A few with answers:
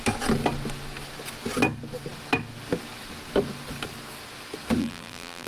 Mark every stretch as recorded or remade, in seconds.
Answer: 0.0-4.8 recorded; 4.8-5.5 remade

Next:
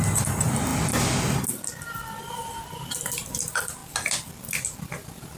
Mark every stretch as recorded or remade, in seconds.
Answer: 0.0-0.7 remade; 0.7-2.3 recorded; 2.3-3.8 remade; 3.8-4.9 recorded; 4.9-5.4 remade